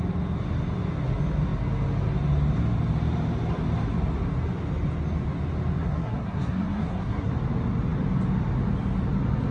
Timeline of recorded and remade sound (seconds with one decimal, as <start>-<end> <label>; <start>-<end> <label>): 0.0-5.8 recorded; 5.8-7.3 remade; 7.3-9.5 recorded